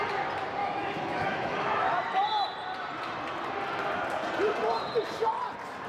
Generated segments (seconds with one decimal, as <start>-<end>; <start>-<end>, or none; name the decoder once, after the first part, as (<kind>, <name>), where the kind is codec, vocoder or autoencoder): 0.6-1.9 (autoencoder, DAC-VAE)